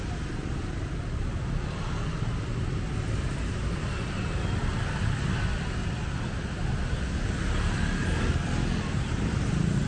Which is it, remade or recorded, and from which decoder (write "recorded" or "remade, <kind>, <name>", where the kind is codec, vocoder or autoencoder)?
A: recorded